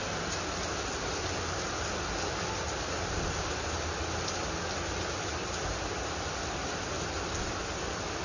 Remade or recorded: recorded